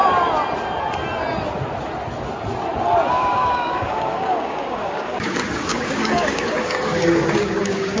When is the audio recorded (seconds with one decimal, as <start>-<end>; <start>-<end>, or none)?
0.0-3.1